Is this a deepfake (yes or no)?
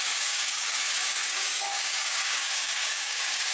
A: yes